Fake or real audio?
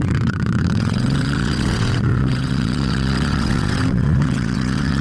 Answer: fake